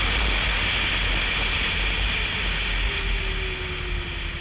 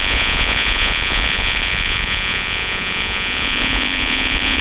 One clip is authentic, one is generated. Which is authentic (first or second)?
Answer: first